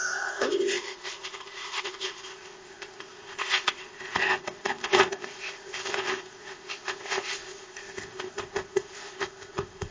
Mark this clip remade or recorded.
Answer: remade